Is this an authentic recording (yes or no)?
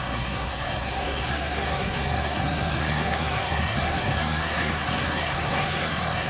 no